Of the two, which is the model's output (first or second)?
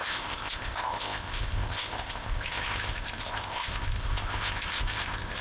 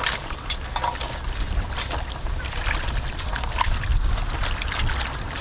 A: first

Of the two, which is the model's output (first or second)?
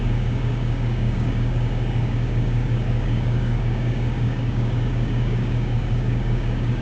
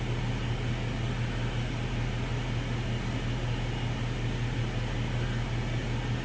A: first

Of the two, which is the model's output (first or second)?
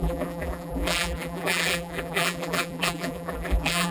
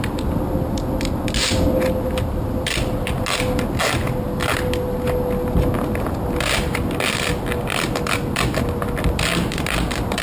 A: first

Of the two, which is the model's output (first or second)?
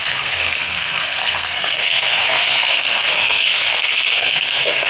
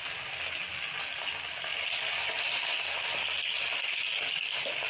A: first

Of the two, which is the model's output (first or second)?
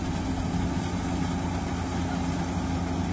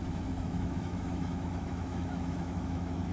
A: second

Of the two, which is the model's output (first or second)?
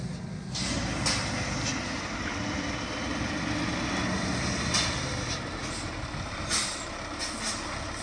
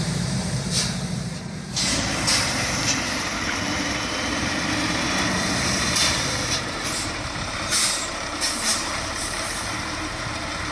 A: second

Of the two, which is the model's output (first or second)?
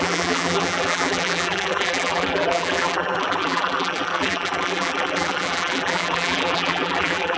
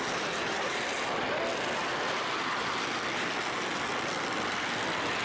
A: first